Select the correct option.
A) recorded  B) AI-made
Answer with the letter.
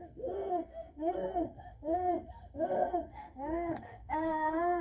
B